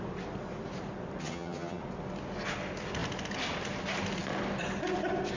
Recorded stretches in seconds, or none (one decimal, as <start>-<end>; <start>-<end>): 0.0-1.2; 1.8-5.4